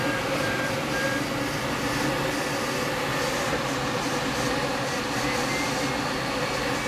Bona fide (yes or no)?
yes